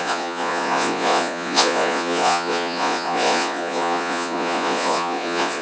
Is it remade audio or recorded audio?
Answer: remade